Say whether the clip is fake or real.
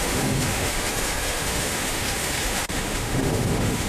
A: fake